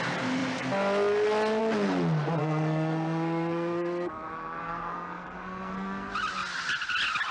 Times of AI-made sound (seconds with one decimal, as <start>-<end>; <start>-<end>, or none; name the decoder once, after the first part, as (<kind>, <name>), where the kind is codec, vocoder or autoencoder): 2.4-6.1 (codec, SNAC)